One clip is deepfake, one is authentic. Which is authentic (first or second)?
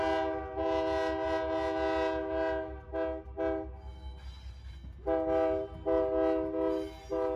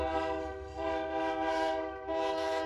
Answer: first